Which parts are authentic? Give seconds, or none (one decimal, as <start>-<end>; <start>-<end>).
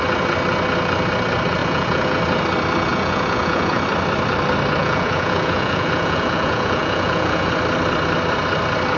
0.0-1.6; 2.2-2.9; 3.8-4.8; 7.5-9.0